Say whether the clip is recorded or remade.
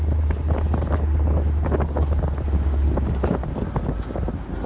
recorded